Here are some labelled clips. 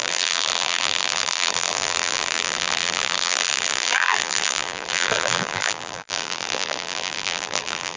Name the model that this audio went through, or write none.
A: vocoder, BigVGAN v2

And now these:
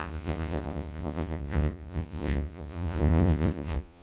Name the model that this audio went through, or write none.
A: vocoder, Vocos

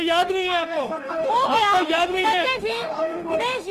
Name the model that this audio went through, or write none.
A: autoencoder, DAC-VAE